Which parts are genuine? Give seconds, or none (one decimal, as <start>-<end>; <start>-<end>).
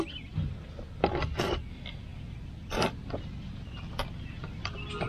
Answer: 0.0-5.1